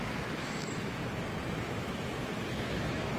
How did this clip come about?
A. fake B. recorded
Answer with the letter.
A